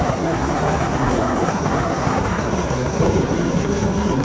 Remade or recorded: remade